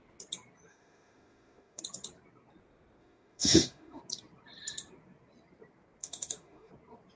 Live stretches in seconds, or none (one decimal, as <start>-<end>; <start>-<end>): 0.0-0.7; 1.8-3.0; 4.0-6.0; 6.7-7.2